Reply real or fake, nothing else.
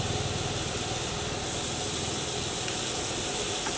real